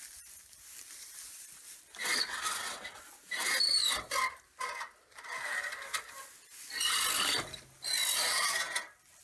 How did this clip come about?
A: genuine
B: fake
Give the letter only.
A